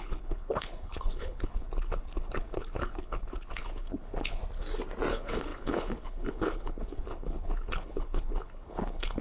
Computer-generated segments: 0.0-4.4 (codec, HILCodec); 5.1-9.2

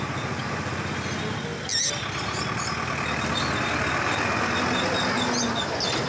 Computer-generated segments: none

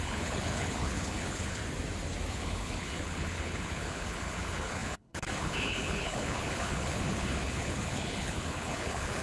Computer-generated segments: 0.0-1.6 (codec, HILCodec); 2.3-9.2

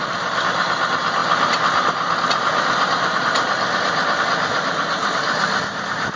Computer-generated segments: none

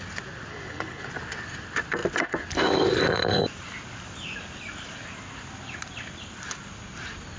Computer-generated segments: 0.5-1.1 (codec, HILCodec)